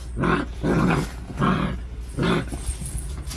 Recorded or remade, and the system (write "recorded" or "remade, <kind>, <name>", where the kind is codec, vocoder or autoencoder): recorded